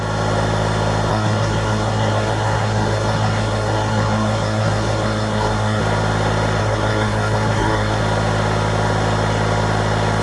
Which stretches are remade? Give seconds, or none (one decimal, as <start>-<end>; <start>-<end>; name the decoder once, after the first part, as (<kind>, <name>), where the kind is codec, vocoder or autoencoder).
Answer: 1.1-5.8 (codec, SNAC); 6.6-8.0